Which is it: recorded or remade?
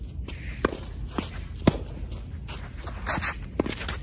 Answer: recorded